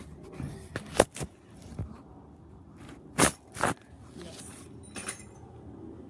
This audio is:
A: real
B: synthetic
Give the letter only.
A